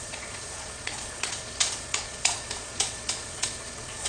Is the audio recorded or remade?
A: remade